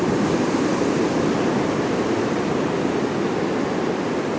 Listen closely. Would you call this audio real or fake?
real